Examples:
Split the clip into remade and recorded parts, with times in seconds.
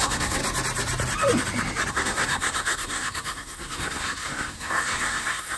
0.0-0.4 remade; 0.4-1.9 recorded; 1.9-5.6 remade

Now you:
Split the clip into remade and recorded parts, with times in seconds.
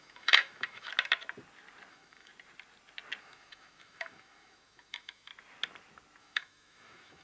0.0-0.9 remade; 0.9-1.9 recorded; 1.9-2.3 remade; 2.3-3.2 recorded; 3.2-5.3 remade; 5.3-6.2 recorded; 6.2-7.2 remade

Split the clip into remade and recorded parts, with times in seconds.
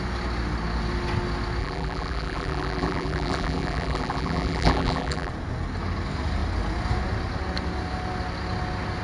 0.0-1.6 recorded; 1.6-5.3 remade; 5.3-9.0 recorded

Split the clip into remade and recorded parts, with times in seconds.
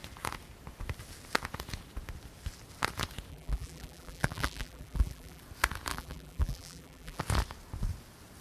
0.0-3.3 recorded; 3.3-5.4 remade; 5.4-5.9 recorded; 5.9-7.2 remade; 7.2-8.4 recorded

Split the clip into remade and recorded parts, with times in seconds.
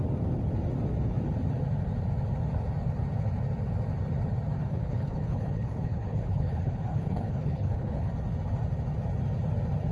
0.0-4.6 recorded; 4.6-8.1 remade; 8.1-9.9 recorded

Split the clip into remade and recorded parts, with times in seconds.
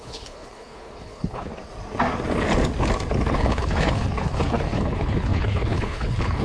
0.0-1.5 remade; 1.5-3.3 recorded; 3.3-6.4 remade